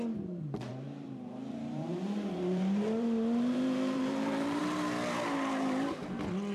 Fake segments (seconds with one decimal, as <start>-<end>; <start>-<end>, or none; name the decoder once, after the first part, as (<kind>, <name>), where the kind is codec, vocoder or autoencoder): 0.7-4.6 (vocoder, BigVGAN v2)